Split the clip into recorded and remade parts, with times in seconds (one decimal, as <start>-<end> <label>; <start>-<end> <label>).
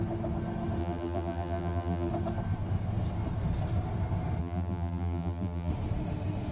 0.0-0.8 recorded; 0.8-2.1 remade; 2.1-4.4 recorded; 4.4-5.7 remade; 5.7-6.5 recorded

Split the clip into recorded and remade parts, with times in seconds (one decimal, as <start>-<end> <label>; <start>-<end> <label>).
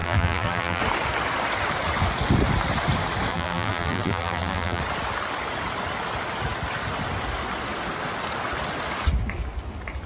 0.0-0.8 remade; 0.8-3.3 recorded; 3.3-4.8 remade; 4.8-10.1 recorded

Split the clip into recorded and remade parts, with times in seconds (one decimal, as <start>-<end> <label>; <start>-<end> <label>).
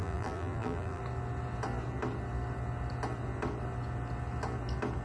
0.0-1.0 remade; 1.0-5.0 recorded